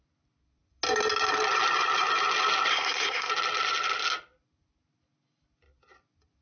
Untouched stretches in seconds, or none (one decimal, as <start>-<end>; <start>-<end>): 0.0-2.7; 3.3-6.4